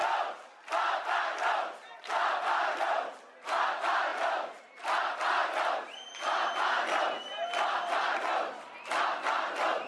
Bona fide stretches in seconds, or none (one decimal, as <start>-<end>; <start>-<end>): 0.0-9.9